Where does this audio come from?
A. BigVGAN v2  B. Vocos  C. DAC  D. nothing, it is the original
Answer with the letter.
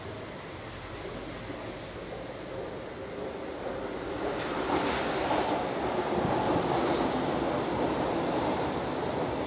D